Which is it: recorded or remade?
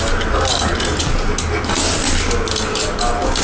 recorded